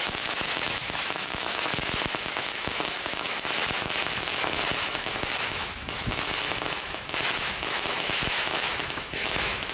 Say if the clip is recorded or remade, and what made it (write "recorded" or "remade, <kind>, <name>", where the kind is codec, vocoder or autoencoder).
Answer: remade, autoencoder, DAC-VAE